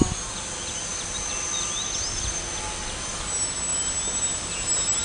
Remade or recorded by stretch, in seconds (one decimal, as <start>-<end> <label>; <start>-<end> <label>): 0.0-5.0 recorded